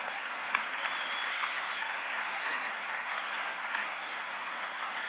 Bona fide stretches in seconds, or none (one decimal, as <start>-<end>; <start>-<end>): 0.7-1.3